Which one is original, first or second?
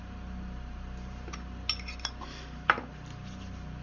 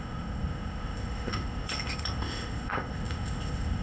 first